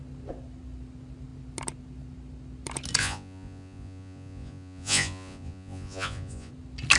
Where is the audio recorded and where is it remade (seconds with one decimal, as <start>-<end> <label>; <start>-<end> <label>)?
0.0-3.0 recorded; 3.0-6.5 remade; 6.5-7.0 recorded